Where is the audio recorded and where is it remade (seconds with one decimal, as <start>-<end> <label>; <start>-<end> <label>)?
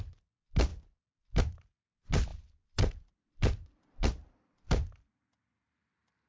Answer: 0.0-0.7 recorded; 0.7-1.4 remade; 1.4-2.3 recorded; 2.3-6.3 remade